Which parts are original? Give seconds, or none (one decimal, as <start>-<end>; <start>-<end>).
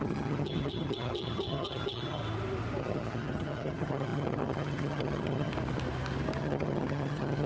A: 2.2-2.8; 5.5-6.4